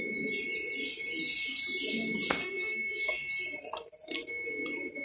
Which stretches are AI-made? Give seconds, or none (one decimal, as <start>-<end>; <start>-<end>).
2.4-3.3